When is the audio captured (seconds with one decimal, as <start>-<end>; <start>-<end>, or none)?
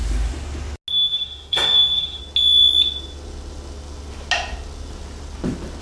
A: 0.0-0.9; 2.2-5.8